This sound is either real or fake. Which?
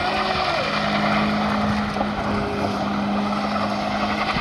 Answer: real